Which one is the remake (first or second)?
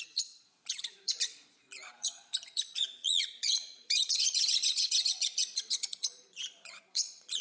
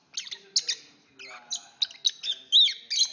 first